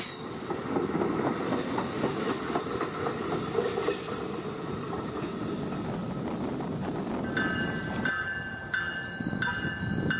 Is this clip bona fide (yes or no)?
yes